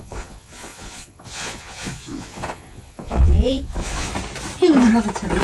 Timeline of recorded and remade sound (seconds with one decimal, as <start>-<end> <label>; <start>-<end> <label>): 0.0-4.1 remade; 4.1-5.4 recorded